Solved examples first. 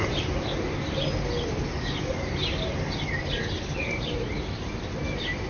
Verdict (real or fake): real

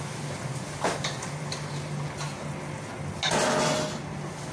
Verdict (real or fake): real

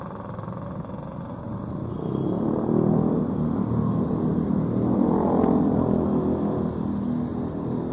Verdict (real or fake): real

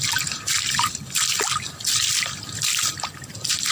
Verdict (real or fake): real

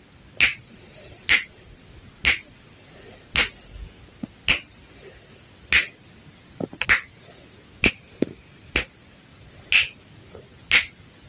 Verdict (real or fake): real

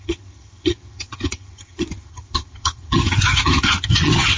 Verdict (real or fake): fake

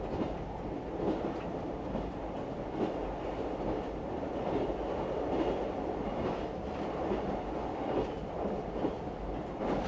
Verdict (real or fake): real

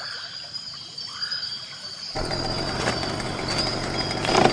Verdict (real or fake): real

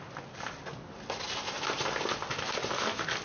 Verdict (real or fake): real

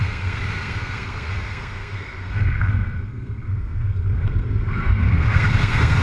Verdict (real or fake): fake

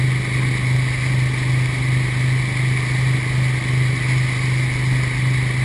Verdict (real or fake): real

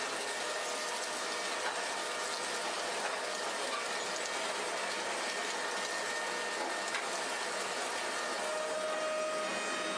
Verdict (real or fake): real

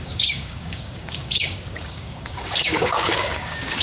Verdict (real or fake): fake